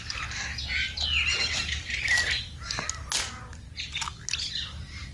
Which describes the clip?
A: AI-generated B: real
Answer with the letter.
B